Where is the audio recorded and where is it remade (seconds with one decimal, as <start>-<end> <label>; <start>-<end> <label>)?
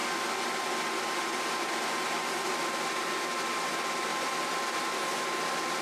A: 0.0-5.8 recorded